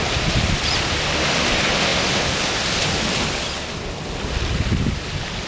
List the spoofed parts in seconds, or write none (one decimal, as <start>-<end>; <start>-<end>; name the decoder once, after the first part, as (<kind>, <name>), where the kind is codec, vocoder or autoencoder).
none